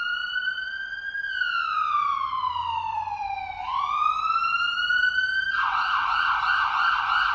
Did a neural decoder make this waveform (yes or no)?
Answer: no